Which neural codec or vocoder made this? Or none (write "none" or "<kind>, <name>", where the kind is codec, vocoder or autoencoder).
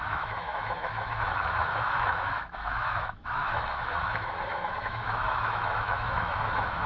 autoencoder, DAC-VAE